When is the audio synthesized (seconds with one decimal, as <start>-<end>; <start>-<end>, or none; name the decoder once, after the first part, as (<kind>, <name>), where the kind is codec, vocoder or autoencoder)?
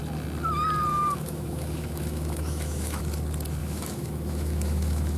0.9-3.0 (autoencoder, DAC-VAE); 3.6-5.2